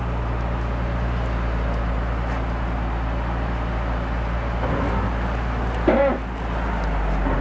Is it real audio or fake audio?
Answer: real